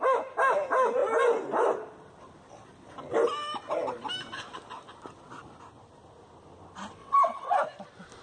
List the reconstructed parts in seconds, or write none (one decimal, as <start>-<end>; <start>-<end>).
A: 7.0-7.6